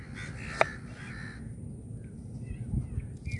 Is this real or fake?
real